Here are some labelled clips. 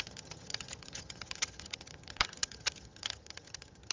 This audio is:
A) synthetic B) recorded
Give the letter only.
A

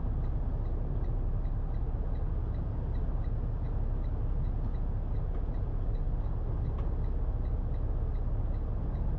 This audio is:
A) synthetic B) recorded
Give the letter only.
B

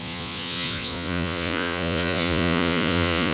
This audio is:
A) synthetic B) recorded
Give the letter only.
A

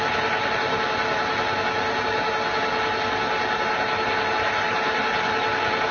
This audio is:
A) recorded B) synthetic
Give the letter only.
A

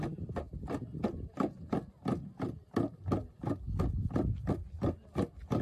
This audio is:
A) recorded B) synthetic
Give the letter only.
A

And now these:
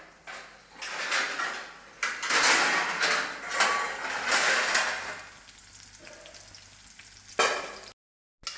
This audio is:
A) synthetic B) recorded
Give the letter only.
B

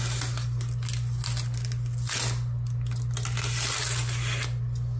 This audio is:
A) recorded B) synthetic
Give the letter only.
A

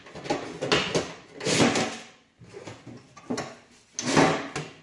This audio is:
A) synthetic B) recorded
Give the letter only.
B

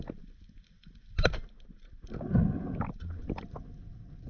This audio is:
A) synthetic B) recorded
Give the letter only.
B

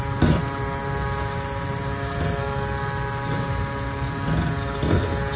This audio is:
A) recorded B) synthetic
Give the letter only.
A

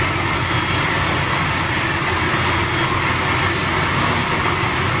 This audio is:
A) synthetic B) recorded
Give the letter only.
B